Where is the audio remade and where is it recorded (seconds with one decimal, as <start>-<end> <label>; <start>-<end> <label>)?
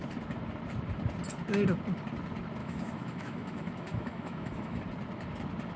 0.0-2.6 recorded; 2.6-4.8 remade; 4.8-5.8 recorded